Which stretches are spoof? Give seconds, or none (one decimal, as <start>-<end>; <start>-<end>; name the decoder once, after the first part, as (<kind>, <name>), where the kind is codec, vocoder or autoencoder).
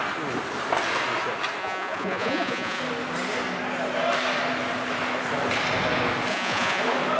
1.6-2.8 (vocoder, Vocos); 6.3-6.8